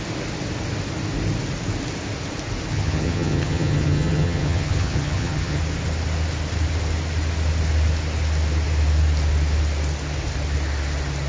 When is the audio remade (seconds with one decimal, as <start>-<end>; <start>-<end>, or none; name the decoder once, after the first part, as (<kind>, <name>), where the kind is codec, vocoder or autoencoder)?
2.7-5.6 (vocoder, HiFi-GAN)